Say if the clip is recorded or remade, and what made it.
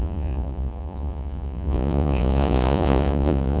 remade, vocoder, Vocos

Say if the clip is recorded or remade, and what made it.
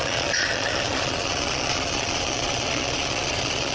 remade, vocoder, Vocos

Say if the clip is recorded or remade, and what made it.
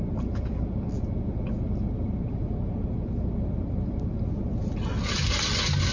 recorded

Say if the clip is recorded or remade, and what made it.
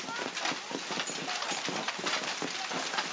recorded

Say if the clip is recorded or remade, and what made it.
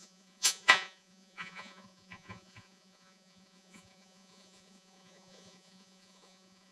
remade, vocoder, Vocos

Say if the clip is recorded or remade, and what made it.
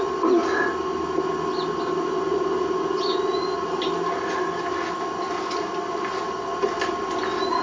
recorded